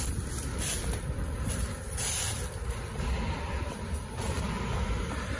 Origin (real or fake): fake